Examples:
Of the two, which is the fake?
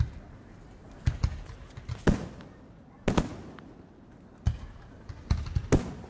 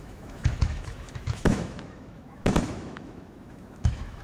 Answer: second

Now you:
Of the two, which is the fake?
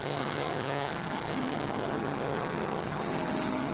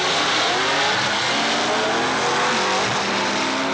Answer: first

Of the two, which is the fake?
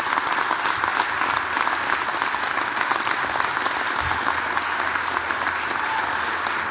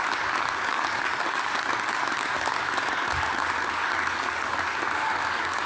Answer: second